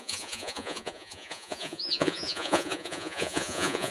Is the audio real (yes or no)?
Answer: no